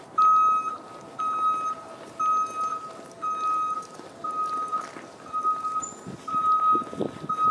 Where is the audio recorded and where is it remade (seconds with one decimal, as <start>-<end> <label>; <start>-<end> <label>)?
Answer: 0.0-7.5 recorded